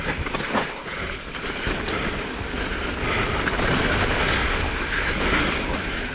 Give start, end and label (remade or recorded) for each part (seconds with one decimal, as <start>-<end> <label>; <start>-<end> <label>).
0.0-0.8 recorded; 0.8-1.4 remade; 1.4-6.1 recorded